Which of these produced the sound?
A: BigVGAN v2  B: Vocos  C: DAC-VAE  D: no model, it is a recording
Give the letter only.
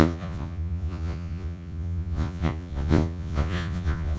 B